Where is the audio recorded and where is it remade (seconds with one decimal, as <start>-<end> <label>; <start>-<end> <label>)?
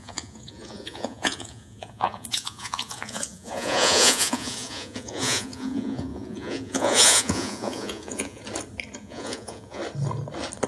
0.0-8.4 remade; 8.4-9.0 recorded; 9.0-9.8 remade; 9.8-10.7 recorded